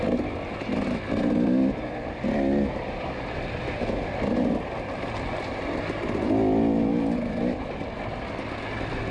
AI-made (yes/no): no